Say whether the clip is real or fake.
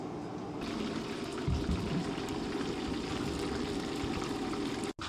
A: real